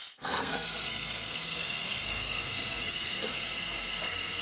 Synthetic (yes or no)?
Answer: yes